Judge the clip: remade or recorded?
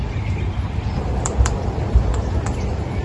remade